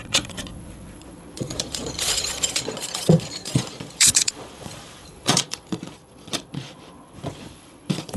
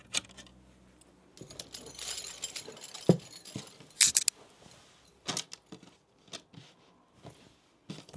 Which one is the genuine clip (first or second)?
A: second